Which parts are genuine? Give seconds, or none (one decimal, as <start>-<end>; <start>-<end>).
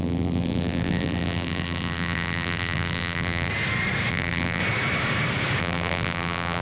3.5-4.1; 4.6-5.6